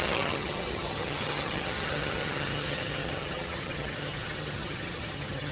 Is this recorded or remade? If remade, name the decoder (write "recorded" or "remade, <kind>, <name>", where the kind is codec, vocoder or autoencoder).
remade, vocoder, HiFi-GAN